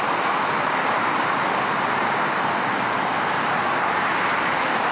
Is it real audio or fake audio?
real